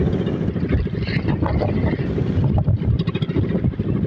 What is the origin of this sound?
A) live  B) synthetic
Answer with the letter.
A